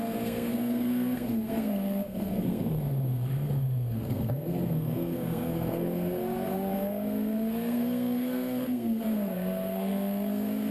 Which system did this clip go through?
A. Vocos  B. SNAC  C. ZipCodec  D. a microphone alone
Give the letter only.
B